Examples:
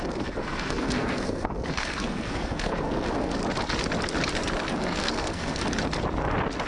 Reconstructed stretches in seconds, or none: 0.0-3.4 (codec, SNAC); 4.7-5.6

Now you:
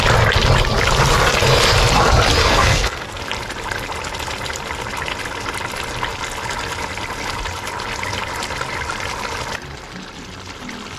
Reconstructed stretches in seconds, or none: 2.4-3.2 (codec, SNAC)

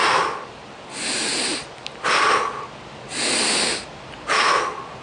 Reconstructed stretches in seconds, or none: none

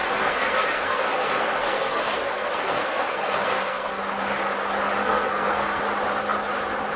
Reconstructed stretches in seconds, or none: 0.0-4.0 (codec, SNAC); 5.0-5.8

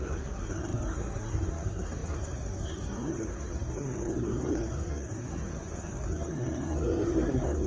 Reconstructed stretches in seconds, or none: 0.0-7.7 (codec, SNAC)

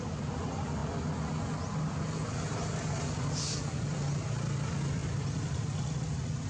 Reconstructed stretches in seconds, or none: none

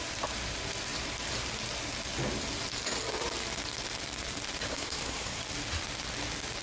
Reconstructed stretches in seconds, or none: 4.7-5.4 (codec, SNAC)

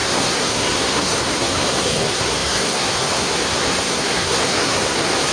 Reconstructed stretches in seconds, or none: 0.0-5.3 (codec, SNAC)